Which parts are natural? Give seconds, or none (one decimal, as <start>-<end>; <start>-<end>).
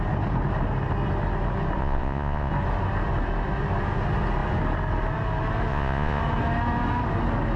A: 0.0-1.8; 2.5-5.7; 6.2-7.6